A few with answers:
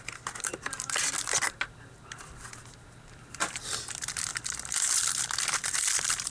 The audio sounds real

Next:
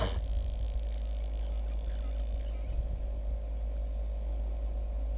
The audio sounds real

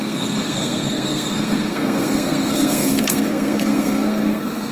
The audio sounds fake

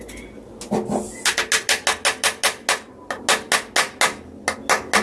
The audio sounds real